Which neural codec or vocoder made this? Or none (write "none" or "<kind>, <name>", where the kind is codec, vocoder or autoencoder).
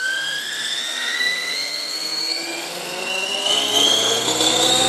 codec, SNAC